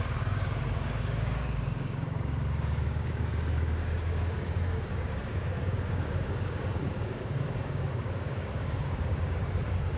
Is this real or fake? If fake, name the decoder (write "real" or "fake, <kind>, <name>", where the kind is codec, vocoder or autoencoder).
fake, codec, DAC